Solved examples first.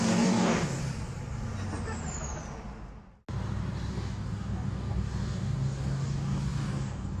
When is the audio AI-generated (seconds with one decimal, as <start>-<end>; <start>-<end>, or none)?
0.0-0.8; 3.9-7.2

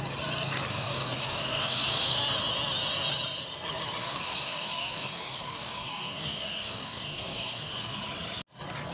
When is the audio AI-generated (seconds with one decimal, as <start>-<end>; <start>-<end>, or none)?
0.7-2.2; 4.0-8.0

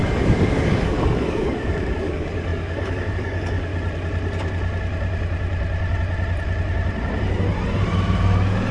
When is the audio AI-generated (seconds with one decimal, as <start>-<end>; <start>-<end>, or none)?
0.0-3.7